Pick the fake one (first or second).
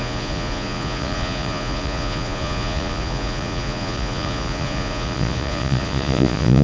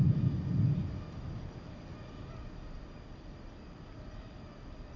first